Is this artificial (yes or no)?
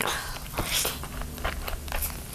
no